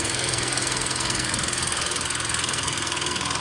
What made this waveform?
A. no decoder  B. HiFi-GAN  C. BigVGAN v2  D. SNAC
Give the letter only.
D